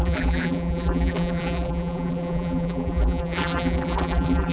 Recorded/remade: remade